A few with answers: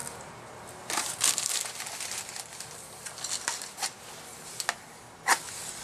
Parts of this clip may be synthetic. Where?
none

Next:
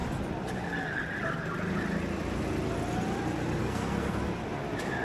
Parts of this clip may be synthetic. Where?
3.6-4.2

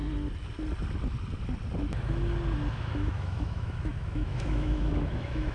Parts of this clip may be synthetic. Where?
2.7-5.5

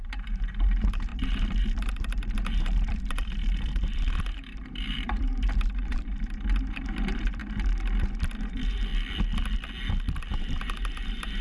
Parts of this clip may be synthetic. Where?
0.0-7.4; 8.4-8.9; 10.3-11.4

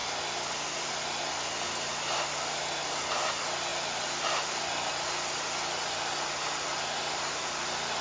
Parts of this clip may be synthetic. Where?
none

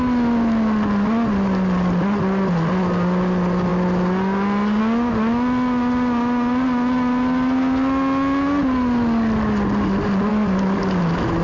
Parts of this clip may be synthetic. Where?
none